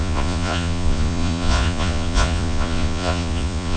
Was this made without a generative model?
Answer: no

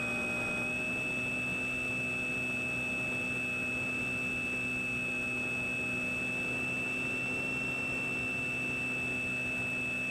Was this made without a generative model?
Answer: yes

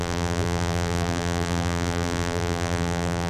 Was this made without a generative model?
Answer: no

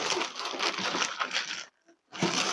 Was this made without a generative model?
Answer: yes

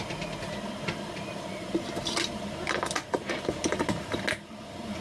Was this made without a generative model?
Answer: yes